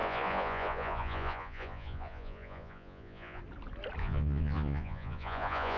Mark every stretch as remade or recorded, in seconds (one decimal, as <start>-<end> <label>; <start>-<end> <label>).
0.0-3.4 remade; 3.4-4.0 recorded; 4.0-5.8 remade